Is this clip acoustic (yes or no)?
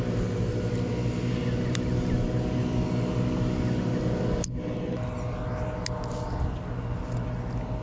yes